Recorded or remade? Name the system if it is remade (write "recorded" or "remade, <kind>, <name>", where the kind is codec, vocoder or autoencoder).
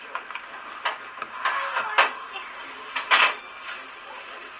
recorded